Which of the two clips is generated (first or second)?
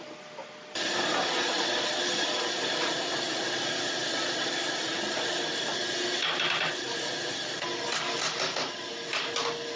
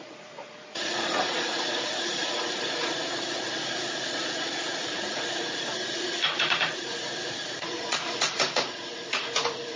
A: second